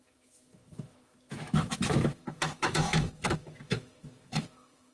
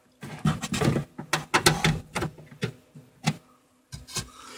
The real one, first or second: second